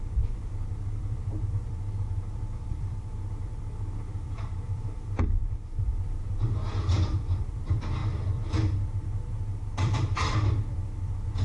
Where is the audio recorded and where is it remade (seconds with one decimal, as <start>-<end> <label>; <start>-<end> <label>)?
0.0-11.4 remade